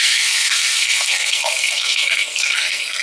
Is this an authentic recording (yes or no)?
no